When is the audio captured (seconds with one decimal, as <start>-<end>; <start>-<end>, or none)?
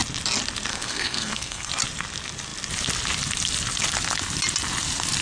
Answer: 0.0-0.7; 1.7-5.2